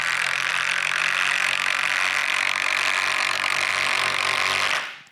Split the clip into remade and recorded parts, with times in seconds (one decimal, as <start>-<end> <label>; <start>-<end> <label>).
0.0-2.2 recorded; 2.2-3.7 remade; 3.7-5.1 recorded